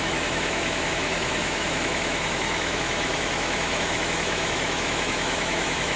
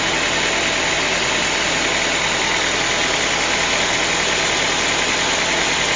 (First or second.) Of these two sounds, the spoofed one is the first